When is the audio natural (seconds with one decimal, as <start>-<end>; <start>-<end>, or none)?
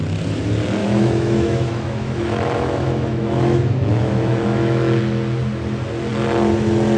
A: 0.0-0.8; 5.0-7.0